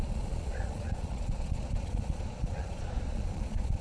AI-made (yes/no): yes